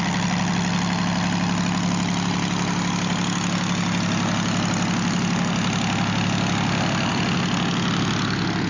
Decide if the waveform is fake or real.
real